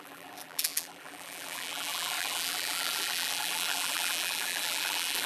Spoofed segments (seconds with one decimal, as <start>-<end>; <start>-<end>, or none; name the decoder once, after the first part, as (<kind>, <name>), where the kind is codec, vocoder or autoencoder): 0.0-5.3 (vocoder, BigVGAN v2)